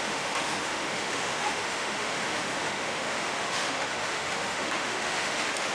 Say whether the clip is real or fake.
fake